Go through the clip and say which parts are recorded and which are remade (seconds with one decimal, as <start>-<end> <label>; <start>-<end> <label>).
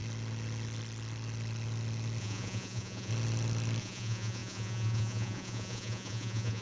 0.0-2.2 recorded; 2.2-3.1 remade; 3.1-3.8 recorded; 3.8-6.6 remade